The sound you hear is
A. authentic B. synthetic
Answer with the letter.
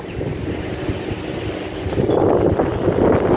A